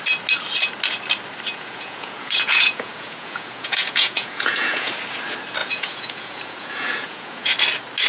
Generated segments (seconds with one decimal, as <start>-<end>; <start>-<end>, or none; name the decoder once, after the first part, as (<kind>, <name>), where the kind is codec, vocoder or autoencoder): 1.5-4.9 (vocoder, Vocos); 5.6-7.5